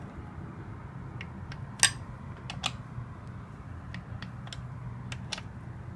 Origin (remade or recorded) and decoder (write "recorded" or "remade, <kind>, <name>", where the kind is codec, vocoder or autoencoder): recorded